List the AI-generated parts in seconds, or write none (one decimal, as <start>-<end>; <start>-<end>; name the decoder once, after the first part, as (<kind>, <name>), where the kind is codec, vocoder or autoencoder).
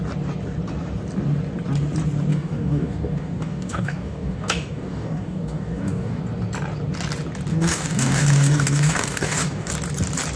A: 2.3-6.2 (codec, DAC); 7.5-9.7